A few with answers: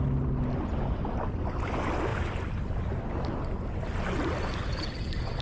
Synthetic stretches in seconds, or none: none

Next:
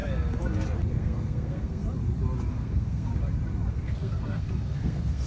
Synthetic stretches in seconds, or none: 0.9-1.8; 2.5-3.1; 3.7-5.3

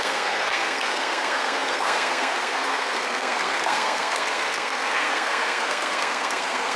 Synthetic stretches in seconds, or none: 0.0-6.8